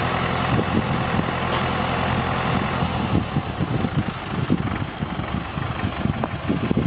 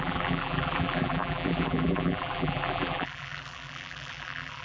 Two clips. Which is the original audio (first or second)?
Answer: first